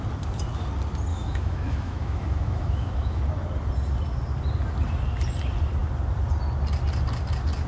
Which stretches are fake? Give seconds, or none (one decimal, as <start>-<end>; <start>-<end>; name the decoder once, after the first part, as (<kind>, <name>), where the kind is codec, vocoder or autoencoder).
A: 1.1-3.2 (autoencoder, DAC-VAE)